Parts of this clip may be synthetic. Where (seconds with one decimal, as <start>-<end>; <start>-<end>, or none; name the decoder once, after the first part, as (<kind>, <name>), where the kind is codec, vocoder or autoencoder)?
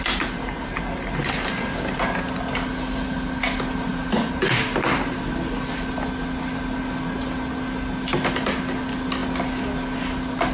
none